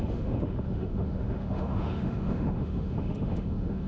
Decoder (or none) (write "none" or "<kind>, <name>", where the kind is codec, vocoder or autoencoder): autoencoder, DAC-VAE